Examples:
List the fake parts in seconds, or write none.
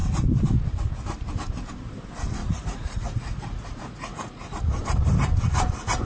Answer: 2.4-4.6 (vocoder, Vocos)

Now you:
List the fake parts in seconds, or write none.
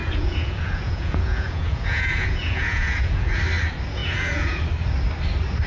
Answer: 0.0-3.4 (vocoder, Vocos); 4.0-4.6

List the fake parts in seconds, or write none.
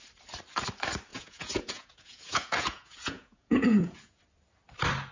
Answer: 1.1-4.2 (vocoder, Vocos)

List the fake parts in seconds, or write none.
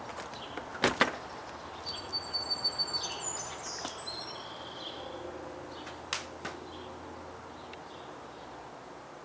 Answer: none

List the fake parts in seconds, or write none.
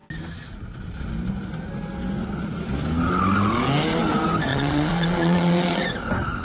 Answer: 4.5-5.8 (vocoder, Vocos)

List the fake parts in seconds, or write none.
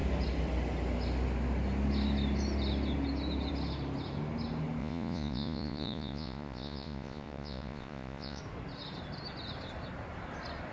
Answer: 4.8-8.4 (vocoder, Vocos)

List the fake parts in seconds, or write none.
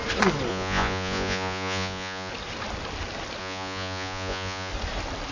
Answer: 0.5-2.3 (vocoder, Vocos); 3.4-4.7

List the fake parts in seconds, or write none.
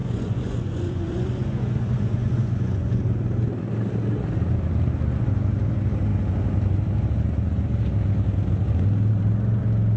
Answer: 0.0-3.0 (vocoder, Vocos)